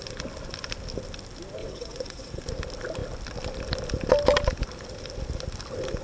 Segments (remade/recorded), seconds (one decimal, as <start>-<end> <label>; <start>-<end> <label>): 0.0-1.6 recorded; 1.6-2.4 remade; 2.4-6.0 recorded